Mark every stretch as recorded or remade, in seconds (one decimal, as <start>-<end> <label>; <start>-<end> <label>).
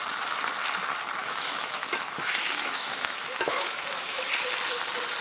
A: 0.0-1.2 recorded; 1.2-4.3 remade; 4.3-5.2 recorded